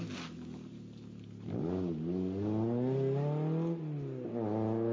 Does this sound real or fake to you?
real